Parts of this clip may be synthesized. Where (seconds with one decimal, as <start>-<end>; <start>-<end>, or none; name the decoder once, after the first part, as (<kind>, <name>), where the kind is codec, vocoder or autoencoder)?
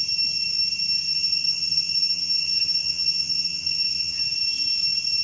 1.1-4.2 (vocoder, HiFi-GAN)